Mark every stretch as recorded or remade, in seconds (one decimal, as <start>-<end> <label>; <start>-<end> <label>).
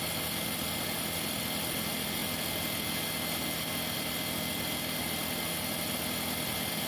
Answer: 0.0-6.9 recorded